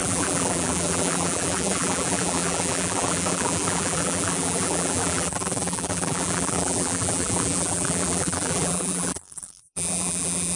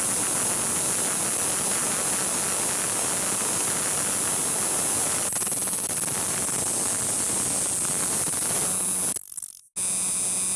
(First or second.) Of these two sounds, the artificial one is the first